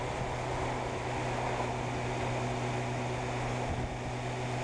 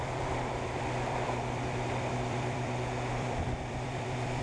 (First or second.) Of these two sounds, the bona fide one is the first